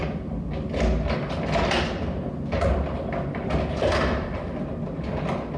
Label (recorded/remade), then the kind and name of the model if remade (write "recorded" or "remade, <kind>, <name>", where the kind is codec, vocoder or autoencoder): recorded